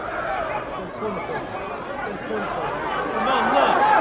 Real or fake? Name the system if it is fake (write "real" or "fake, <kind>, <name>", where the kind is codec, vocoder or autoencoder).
real